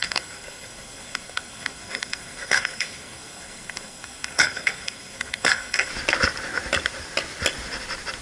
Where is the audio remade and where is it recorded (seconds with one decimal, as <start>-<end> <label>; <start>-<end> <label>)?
0.0-5.9 remade; 5.9-8.2 recorded